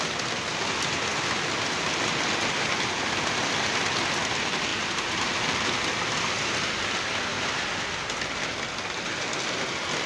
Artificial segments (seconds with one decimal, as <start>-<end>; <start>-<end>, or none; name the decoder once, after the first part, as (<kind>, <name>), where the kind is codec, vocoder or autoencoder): 4.7-5.3 (vocoder, BigVGAN v2); 7.3-8.1